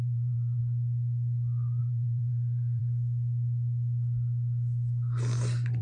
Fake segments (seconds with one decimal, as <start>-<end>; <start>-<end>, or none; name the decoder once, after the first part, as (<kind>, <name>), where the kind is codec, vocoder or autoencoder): 0.0-0.6 (vocoder, BigVGAN v2); 1.8-2.8